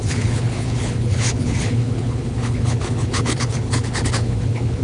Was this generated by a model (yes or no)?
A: yes